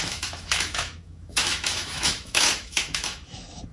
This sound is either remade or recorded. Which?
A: remade